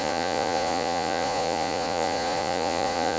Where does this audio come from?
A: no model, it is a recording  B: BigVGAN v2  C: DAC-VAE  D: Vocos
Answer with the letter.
D